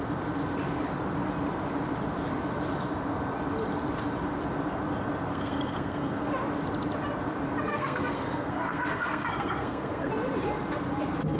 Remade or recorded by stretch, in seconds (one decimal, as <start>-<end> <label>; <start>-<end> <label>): 0.0-5.3 recorded; 5.3-6.3 remade; 6.3-7.7 recorded; 7.7-10.1 remade; 10.1-11.4 recorded